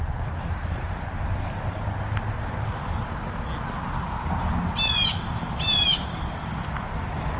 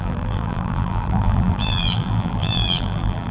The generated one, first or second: second